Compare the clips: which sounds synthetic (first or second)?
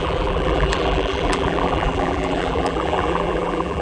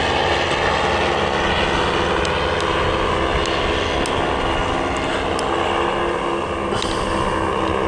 first